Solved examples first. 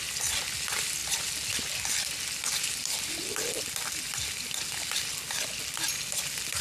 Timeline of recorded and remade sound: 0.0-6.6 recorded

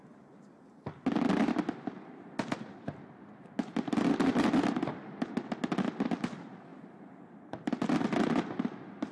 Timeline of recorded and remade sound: 0.0-9.1 recorded

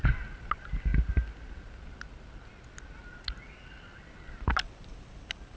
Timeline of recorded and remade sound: 0.0-5.6 recorded

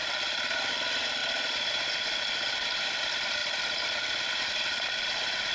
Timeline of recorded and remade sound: 0.0-5.5 recorded